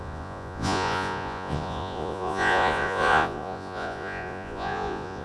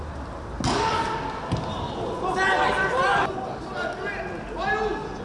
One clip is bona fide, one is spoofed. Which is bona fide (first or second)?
second